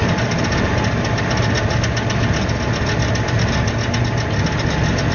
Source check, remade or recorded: recorded